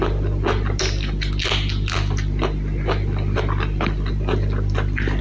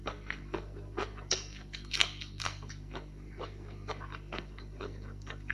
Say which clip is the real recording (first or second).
first